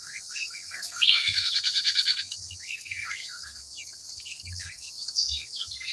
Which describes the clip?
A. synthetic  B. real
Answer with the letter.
A